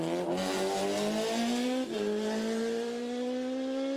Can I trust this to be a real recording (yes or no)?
yes